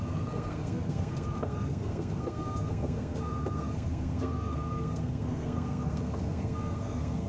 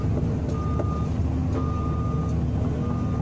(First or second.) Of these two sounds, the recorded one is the second